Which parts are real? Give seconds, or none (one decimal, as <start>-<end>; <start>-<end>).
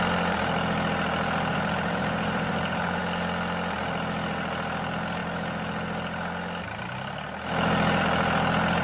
0.0-1.5; 3.0-8.8